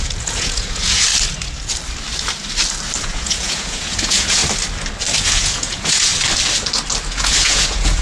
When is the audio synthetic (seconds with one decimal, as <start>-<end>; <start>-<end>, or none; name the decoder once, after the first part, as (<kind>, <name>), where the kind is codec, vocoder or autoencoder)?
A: 0.0-1.1 (vocoder, Vocos); 3.0-4.4; 5.2-6.1; 7.1-8.0